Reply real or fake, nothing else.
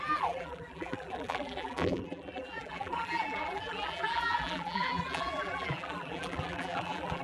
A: fake